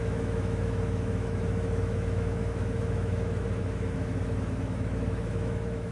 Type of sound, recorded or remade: remade